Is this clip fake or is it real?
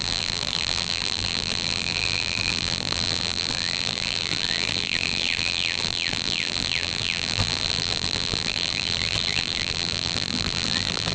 fake